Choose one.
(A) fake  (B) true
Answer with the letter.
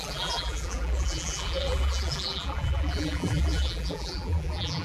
A